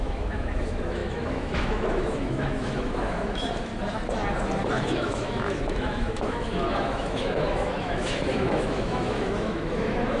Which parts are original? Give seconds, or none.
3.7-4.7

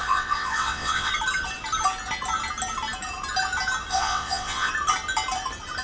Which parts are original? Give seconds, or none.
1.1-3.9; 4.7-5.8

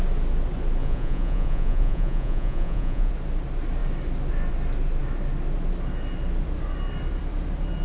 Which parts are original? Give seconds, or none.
0.0-0.8; 3.1-7.8

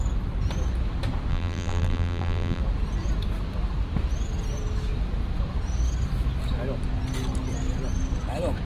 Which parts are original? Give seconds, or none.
0.0-1.3; 2.6-8.6

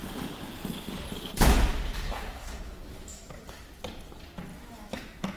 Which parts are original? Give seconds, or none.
0.0-1.7; 3.4-4.5

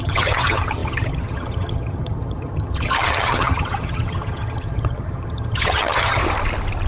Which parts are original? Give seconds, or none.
6.2-6.9